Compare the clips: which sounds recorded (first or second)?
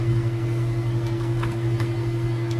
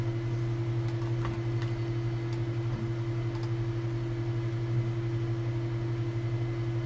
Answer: second